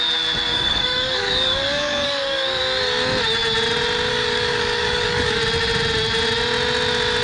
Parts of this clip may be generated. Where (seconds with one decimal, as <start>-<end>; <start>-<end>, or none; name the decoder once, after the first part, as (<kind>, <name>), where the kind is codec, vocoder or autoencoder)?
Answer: 0.5-2.6 (codec, DAC); 4.1-5.4